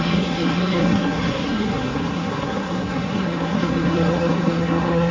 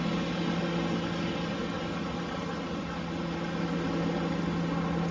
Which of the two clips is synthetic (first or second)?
first